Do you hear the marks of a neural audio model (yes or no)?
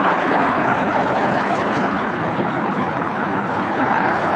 yes